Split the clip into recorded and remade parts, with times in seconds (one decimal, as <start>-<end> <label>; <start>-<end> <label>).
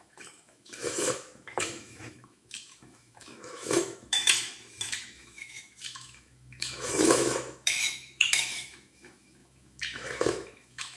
0.0-11.0 remade